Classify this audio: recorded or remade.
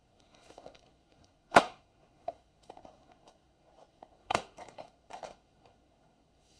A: remade